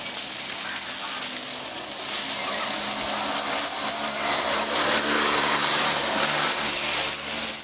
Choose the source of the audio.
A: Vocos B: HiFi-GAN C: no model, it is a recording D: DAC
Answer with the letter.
C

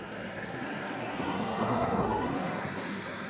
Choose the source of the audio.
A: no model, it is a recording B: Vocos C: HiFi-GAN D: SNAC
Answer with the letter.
D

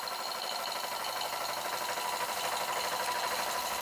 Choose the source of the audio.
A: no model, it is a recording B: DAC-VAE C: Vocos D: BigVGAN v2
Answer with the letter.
A